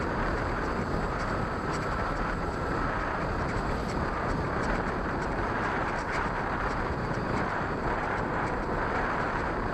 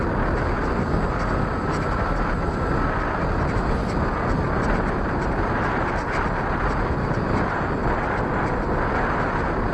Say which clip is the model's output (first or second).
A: first